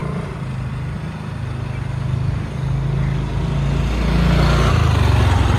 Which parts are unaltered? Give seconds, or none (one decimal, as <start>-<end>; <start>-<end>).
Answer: 0.0-5.6